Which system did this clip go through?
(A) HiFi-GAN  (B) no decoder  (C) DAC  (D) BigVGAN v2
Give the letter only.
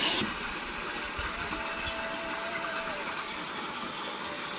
B